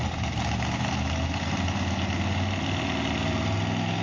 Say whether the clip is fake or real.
real